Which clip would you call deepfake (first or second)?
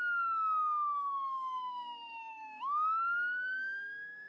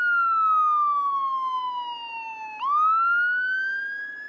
first